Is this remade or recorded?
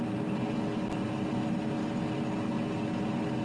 recorded